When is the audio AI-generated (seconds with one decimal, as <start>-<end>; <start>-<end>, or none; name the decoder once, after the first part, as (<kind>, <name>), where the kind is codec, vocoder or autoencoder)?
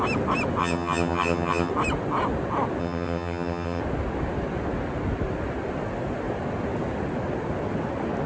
0.6-1.7 (vocoder, HiFi-GAN); 2.8-3.8